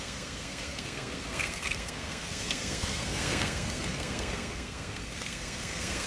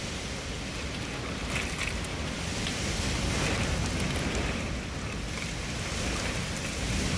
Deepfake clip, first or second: first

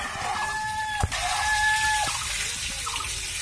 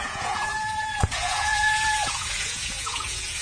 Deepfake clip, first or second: second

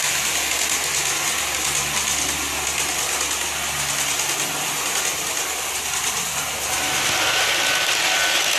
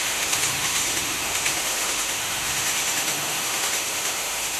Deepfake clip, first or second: second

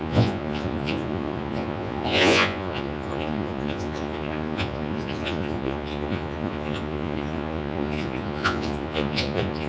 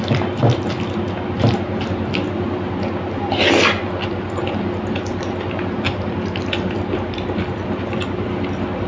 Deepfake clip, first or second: first